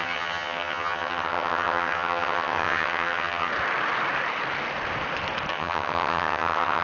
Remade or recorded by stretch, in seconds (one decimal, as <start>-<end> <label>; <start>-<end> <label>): 0.0-3.5 remade; 3.5-5.5 recorded; 5.5-6.8 remade